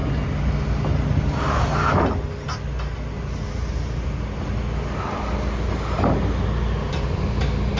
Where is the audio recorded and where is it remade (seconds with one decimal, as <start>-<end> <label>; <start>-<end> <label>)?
0.0-7.8 recorded